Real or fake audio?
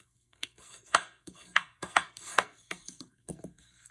fake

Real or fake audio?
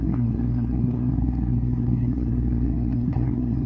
fake